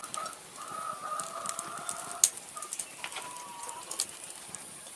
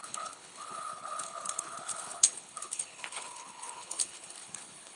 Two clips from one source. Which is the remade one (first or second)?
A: second